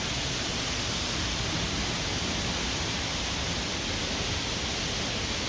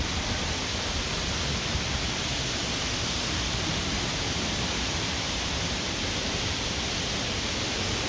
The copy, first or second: second